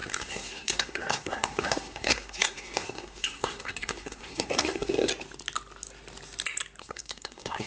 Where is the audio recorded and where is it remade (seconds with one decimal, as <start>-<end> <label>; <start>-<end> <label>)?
0.0-5.1 remade; 5.1-6.8 recorded; 6.8-7.7 remade